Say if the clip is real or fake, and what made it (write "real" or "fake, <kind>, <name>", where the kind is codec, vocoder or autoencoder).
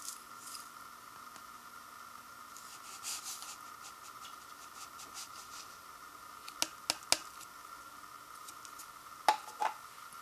real